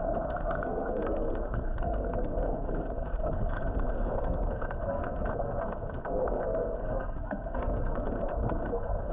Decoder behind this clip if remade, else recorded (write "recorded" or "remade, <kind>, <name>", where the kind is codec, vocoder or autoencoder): remade, codec, SNAC